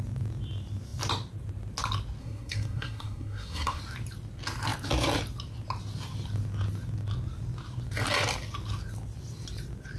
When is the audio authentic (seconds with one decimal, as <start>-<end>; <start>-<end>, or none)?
0.0-2.2; 3.8-10.0